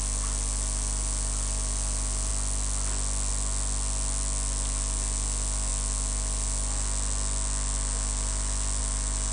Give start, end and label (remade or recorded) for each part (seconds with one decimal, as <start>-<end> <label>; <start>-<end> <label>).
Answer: 0.0-9.3 recorded